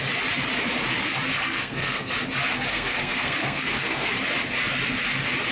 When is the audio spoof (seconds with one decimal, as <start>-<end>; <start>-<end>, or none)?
1.3-2.1; 2.7-4.1